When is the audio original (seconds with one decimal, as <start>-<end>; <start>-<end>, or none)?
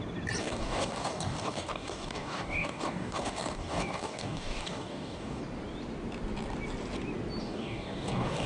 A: 0.0-0.4; 5.4-7.4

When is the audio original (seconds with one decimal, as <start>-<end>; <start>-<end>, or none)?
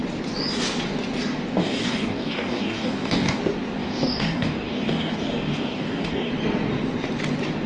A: 0.0-1.6; 3.4-3.8; 6.3-7.7